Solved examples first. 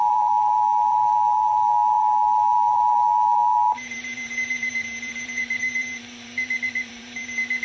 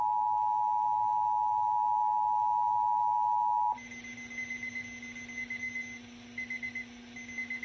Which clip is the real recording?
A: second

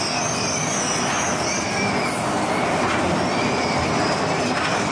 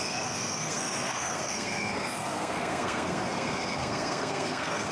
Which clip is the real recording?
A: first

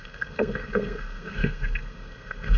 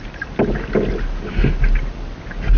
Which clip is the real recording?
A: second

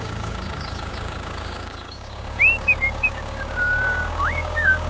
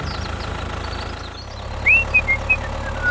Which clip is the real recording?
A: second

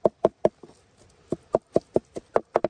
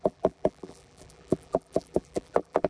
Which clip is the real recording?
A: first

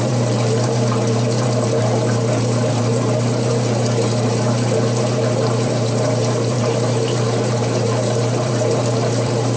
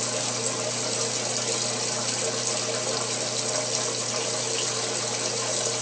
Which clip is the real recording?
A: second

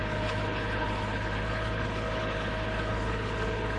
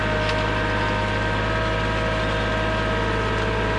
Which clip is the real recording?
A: second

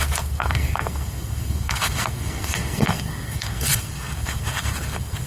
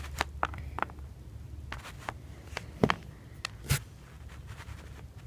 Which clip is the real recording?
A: second